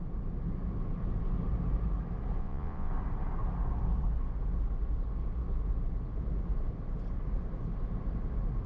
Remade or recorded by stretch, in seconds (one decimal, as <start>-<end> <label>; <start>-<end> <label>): 0.0-2.4 recorded; 2.4-2.9 remade; 2.9-8.7 recorded